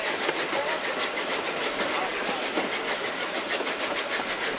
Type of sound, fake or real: real